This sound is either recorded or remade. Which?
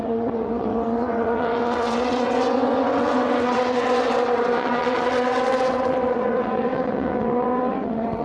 remade